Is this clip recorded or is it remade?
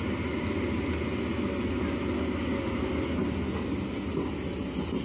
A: recorded